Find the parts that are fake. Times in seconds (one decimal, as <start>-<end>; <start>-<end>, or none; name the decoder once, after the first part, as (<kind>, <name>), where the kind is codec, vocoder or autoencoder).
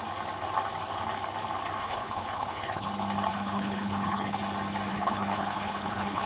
1.8-2.9 (codec, HILCodec); 3.3-4.4; 4.9-6.3